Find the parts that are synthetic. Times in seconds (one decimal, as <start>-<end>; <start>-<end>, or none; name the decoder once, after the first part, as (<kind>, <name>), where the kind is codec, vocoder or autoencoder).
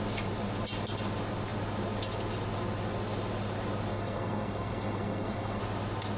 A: 3.9-5.6 (codec, SNAC)